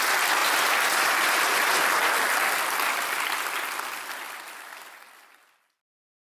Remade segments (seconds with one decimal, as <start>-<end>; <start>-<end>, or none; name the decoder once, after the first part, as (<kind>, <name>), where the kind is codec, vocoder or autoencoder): none